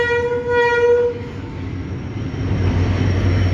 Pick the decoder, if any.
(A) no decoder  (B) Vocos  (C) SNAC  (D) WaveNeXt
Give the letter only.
A